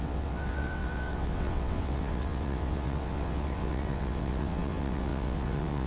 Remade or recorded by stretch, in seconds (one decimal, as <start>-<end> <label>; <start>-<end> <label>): 0.0-5.9 remade